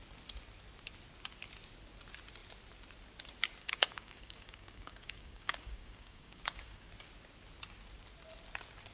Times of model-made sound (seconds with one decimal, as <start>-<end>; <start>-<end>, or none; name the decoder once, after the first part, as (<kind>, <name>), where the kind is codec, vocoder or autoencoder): 3.6-6.9 (codec, DAC)